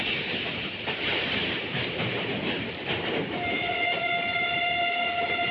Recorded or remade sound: remade